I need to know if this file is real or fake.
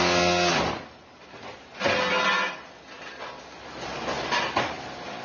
real